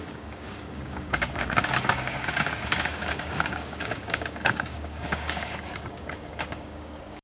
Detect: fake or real fake